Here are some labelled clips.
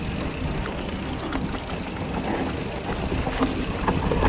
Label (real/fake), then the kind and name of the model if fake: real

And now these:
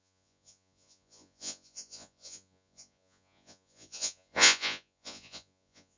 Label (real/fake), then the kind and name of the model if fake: fake, vocoder, Vocos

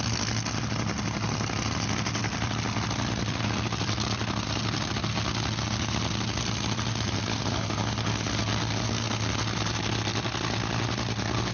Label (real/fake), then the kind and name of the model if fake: real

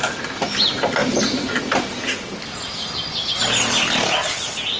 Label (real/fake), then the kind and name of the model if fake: real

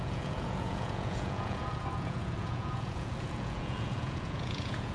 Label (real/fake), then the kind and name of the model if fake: fake, vocoder, Vocos